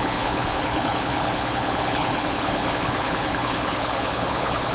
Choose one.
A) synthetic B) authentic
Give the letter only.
A